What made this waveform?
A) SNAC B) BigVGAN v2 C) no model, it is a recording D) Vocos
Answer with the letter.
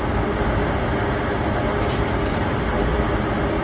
C